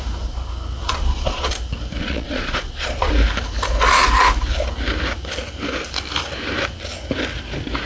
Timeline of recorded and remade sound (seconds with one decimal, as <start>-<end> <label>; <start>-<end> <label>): 0.0-0.8 recorded; 0.8-1.5 remade; 1.5-2.0 recorded; 2.0-3.1 remade; 3.1-7.9 recorded